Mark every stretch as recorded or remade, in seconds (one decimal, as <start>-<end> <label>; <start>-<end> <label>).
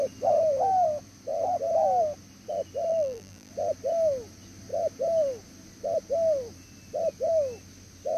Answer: 0.0-2.9 recorded; 2.9-3.5 remade; 3.5-8.2 recorded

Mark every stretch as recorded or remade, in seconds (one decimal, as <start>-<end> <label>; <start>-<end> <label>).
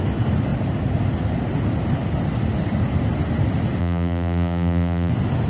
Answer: 0.0-3.8 recorded; 3.8-5.1 remade; 5.1-5.5 recorded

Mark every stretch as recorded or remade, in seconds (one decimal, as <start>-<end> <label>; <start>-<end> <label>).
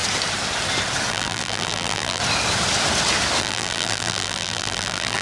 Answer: 0.0-1.1 recorded; 1.1-2.2 remade; 2.2-3.4 recorded; 3.4-5.2 remade